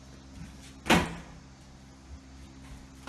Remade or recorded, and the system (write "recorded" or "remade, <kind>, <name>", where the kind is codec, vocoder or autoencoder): recorded